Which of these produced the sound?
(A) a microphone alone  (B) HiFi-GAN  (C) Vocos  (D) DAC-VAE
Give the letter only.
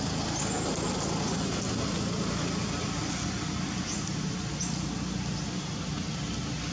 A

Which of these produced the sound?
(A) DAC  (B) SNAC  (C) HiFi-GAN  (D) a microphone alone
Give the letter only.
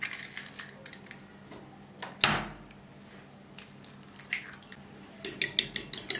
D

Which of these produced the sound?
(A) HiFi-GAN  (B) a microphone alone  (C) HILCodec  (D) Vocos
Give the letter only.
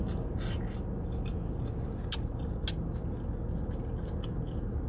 B